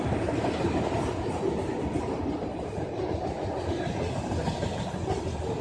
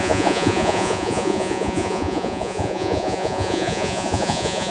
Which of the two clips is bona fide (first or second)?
first